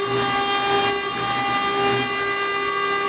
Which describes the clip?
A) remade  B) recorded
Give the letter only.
B